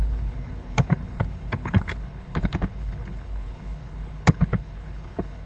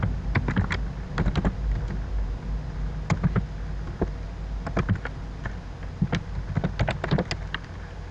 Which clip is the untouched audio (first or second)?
second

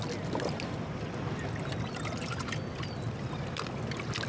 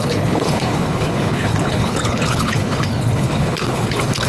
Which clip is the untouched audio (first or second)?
first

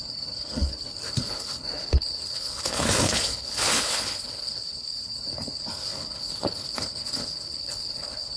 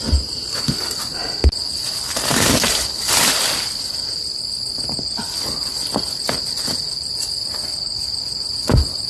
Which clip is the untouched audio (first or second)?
second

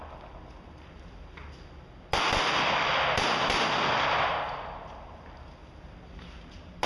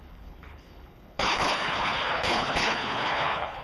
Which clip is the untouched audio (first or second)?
first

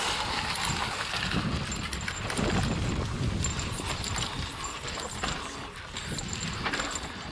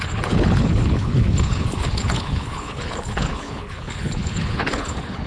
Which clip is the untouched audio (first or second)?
first